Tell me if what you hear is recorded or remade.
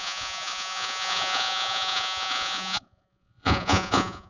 remade